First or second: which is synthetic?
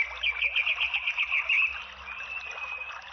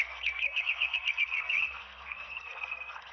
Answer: second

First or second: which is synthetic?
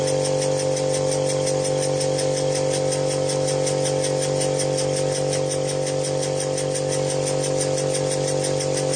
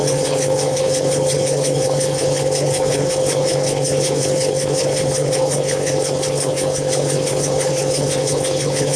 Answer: second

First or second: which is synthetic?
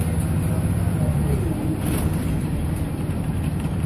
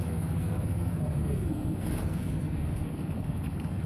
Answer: second